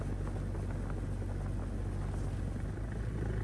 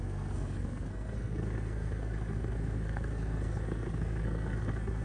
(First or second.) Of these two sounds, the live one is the first